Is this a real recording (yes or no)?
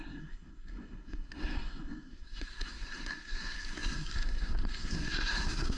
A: no